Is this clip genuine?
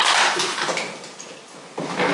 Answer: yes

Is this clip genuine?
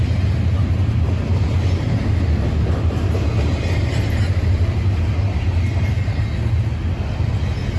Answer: yes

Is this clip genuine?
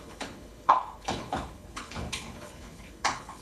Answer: no